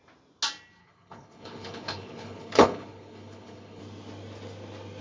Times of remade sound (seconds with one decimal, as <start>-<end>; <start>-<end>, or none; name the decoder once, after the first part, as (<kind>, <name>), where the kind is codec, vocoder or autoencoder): 0.8-3.8 (codec, HILCodec)